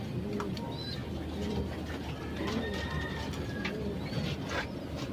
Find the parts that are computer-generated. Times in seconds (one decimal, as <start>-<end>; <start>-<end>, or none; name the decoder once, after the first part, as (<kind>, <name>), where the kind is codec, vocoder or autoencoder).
none